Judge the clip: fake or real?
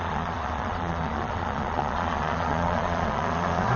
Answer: fake